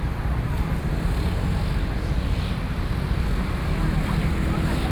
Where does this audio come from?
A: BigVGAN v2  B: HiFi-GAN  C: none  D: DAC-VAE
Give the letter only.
C